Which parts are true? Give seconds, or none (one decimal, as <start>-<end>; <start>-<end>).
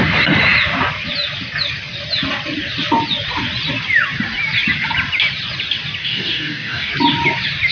0.0-6.0; 6.9-7.7